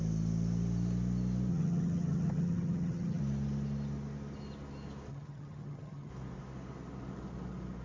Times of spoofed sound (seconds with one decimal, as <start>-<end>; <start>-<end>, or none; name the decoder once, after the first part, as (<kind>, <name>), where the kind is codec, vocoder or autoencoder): 1.5-3.2 (vocoder, HiFi-GAN); 5.1-6.1